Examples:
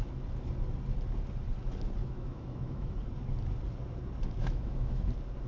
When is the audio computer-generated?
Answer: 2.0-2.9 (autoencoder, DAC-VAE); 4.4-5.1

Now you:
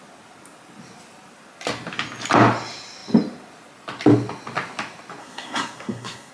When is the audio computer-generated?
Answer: 5.2-6.3 (codec, SNAC)

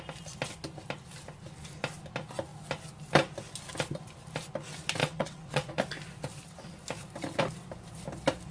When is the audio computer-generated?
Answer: 5.0-5.7 (vocoder, WaveNeXt)

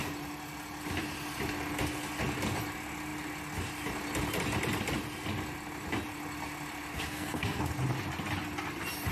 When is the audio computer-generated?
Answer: 6.9-7.7 (codec, SNAC)

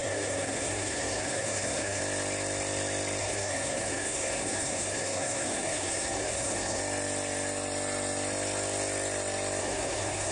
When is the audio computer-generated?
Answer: 0.0-2.0 (codec, SNAC); 3.2-6.8; 9.6-10.3

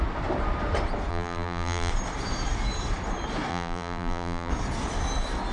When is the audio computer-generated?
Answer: 1.1-1.9 (vocoder, BigVGAN v2); 3.5-4.5

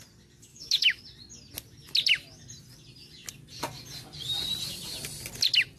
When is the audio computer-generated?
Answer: 0.5-1.0 (autoencoder, DAC-VAE)

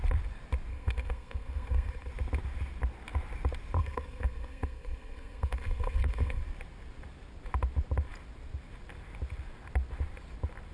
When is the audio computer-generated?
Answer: 0.7-2.1 (codec, SNAC); 3.8-6.4